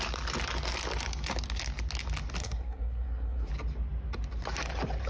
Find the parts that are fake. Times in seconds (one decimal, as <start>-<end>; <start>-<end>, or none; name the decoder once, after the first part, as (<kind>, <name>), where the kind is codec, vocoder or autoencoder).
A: 2.4-3.5 (codec, SNAC)